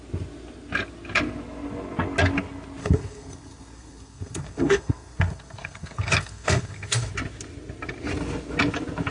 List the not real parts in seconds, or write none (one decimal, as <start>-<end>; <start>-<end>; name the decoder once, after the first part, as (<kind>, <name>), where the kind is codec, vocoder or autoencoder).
2.8-7.1 (codec, SNAC)